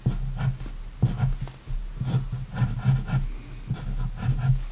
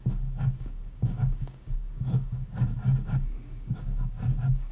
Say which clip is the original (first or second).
first